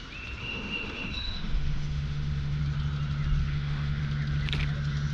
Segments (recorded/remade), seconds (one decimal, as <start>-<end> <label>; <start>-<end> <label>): 0.0-0.4 recorded; 0.4-2.6 remade; 2.6-3.4 recorded; 3.4-4.0 remade; 4.0-5.1 recorded